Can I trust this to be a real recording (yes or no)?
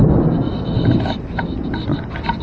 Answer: yes